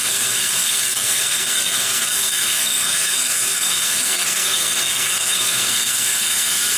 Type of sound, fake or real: fake